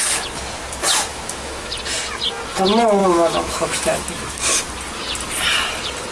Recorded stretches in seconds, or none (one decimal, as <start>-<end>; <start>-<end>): 0.0-1.1; 1.7-3.0; 4.6-6.1